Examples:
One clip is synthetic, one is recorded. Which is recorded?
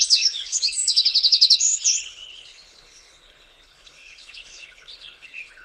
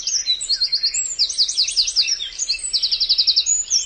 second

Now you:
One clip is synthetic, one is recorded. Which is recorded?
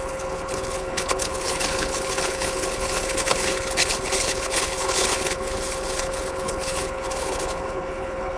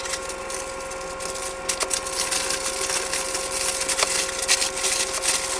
second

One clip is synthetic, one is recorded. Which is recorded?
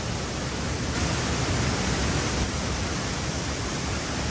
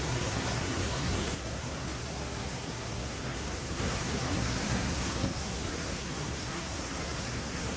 first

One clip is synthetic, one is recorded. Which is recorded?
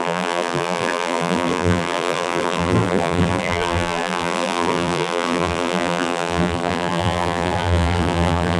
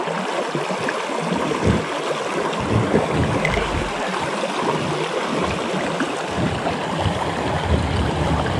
second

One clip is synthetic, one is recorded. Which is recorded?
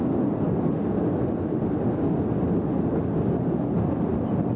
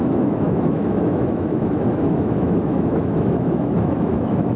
first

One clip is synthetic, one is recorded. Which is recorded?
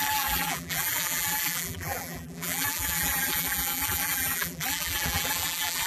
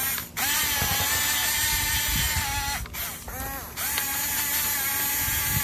second